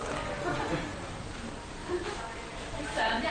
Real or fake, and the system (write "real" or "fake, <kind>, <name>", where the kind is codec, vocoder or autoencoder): real